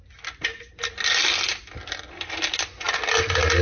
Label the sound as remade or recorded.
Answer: recorded